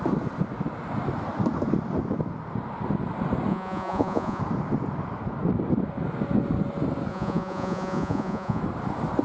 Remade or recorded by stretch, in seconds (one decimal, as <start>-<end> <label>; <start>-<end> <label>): 0.0-3.5 recorded; 3.5-4.4 remade; 4.4-7.1 recorded; 7.1-8.6 remade; 8.6-9.2 recorded